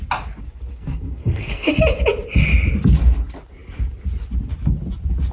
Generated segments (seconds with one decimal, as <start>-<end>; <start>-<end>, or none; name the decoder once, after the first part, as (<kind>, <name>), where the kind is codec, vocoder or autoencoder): 0.7-1.7 (codec, SNAC)